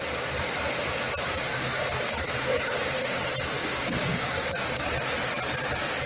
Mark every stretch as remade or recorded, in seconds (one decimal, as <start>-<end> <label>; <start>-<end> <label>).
0.0-1.5 recorded; 1.5-3.2 remade; 3.2-3.6 recorded; 3.6-4.9 remade; 4.9-6.1 recorded